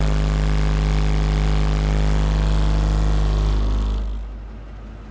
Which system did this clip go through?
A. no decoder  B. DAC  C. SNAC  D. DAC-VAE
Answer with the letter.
A